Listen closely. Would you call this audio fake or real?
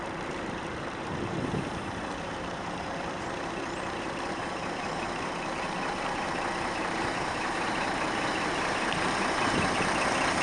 fake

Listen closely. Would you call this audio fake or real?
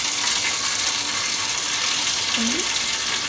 real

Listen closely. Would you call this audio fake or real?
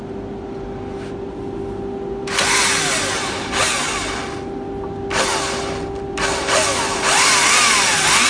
real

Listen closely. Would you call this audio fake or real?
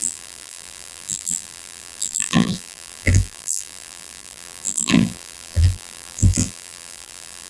fake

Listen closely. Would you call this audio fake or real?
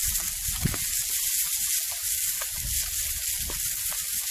real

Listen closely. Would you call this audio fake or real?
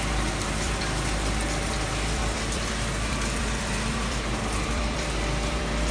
fake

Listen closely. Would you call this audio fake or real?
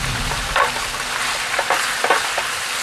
real